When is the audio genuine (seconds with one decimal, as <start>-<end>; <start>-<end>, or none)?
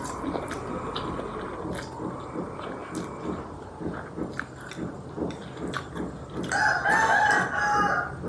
0.0-8.3